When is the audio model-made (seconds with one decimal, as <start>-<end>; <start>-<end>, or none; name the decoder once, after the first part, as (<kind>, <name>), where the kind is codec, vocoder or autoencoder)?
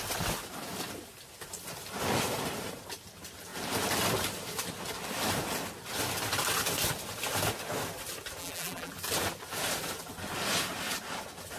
8.4-8.9 (vocoder, BigVGAN v2)